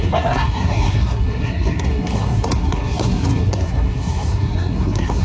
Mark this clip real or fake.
fake